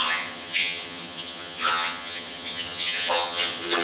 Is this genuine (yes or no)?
no